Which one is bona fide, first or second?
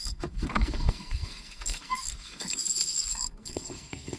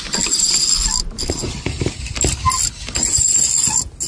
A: second